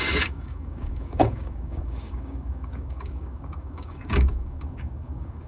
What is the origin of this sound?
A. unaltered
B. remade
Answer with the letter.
B